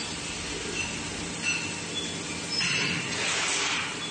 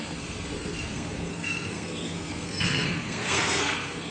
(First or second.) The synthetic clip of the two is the second